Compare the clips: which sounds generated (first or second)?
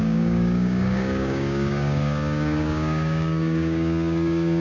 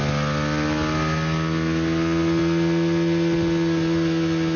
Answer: first